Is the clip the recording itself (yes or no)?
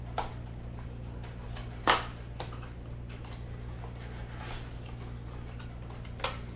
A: yes